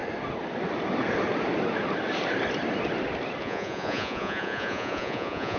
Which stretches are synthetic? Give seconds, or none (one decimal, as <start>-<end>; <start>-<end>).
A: 3.4-5.6

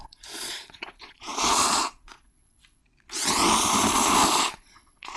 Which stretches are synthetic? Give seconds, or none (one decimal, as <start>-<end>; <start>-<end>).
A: 0.0-2.8; 4.4-5.2

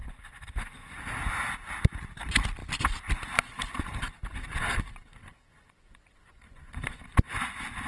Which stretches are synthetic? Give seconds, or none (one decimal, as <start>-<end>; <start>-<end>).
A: 0.0-1.0; 5.4-7.0

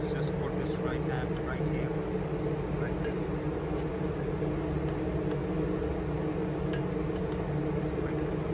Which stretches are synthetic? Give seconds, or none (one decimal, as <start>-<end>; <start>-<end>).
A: none

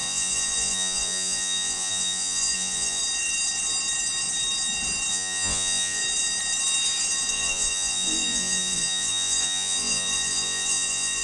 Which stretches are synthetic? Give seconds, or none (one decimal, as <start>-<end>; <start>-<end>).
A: 0.0-3.0; 5.1-6.0; 7.3-11.2